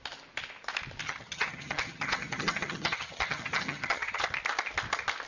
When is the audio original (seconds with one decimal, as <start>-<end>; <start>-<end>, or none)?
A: 0.0-1.0; 4.2-5.3